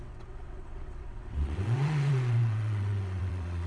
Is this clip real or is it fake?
fake